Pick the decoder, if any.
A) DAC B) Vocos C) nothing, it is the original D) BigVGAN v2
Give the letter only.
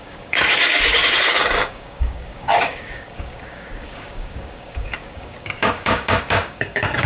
A